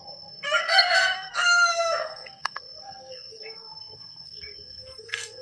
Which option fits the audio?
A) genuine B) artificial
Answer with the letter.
B